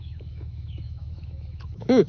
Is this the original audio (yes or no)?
no